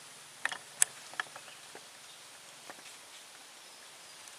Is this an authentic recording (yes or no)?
yes